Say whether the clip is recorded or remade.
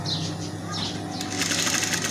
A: recorded